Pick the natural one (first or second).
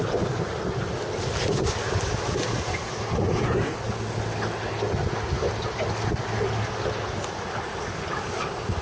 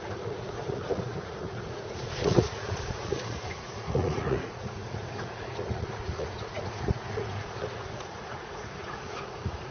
first